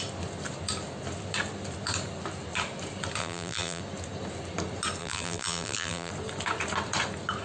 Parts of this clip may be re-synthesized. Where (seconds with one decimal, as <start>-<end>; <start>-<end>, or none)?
3.2-3.8; 5.0-6.1